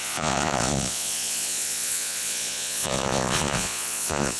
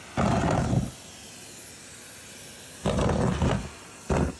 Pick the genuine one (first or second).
second